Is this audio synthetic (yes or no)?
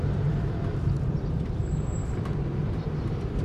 yes